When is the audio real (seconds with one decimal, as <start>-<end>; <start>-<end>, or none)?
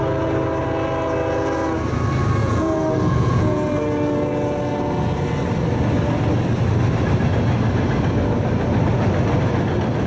0.0-2.4; 3.7-10.1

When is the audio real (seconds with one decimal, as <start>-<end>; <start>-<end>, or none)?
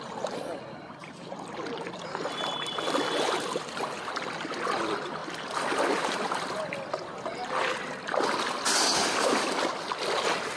0.0-10.6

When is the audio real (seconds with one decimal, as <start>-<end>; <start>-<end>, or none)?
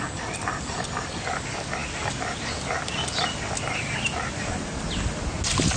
0.0-5.8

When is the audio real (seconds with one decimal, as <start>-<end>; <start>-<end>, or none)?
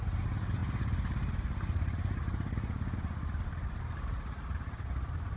0.0-5.4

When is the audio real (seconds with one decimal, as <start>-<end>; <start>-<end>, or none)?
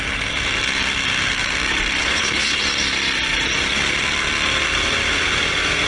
0.0-2.0; 2.6-5.9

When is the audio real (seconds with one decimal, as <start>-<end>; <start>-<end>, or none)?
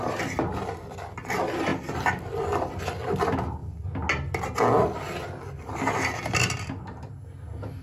0.0-7.8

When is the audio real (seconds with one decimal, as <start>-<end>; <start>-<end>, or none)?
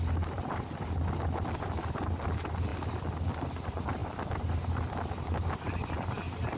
0.0-6.6